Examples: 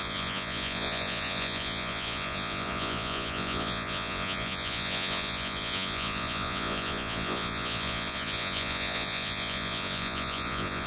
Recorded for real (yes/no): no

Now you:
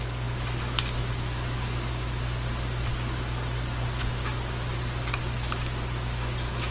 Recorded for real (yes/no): yes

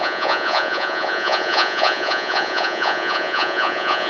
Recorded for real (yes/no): no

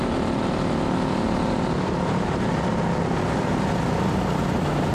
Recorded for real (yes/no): yes